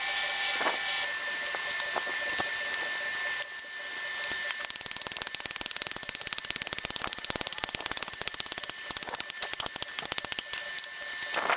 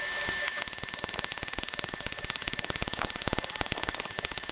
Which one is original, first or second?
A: first